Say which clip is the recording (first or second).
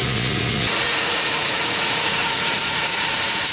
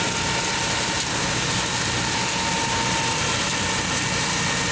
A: second